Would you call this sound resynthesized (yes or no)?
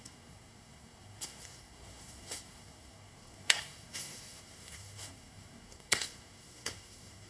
yes